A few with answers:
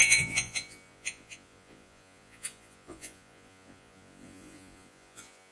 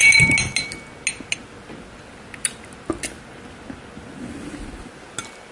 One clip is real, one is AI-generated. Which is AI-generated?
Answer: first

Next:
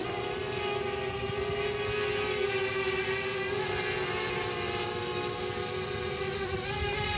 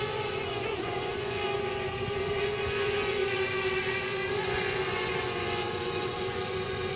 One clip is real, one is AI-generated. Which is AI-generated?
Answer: second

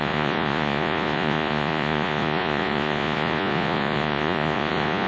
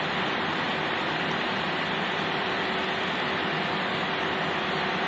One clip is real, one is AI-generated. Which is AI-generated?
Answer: first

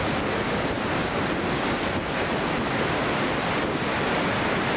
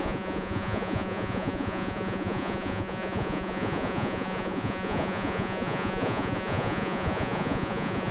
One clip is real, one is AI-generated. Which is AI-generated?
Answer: second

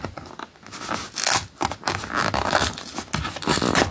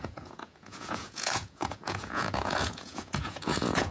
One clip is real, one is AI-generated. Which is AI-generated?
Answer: second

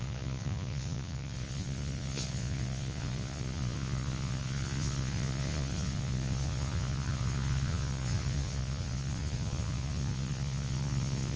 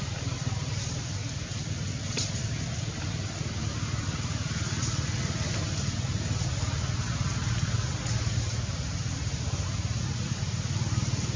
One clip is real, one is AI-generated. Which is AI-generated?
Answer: first